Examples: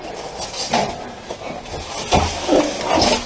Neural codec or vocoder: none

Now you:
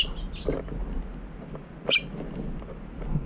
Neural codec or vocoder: none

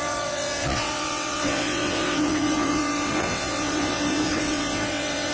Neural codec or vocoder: vocoder, WaveNeXt